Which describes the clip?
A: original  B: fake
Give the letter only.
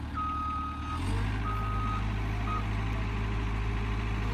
A